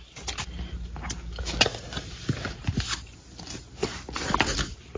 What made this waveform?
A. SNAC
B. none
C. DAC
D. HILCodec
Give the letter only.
B